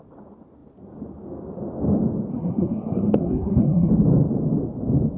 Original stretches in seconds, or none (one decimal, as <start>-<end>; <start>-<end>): 0.0-2.3; 3.9-5.2